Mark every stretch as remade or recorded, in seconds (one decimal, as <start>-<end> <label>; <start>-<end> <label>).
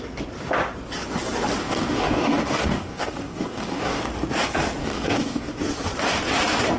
0.0-1.6 recorded; 1.6-4.0 remade; 4.0-4.8 recorded; 4.8-5.6 remade; 5.6-6.8 recorded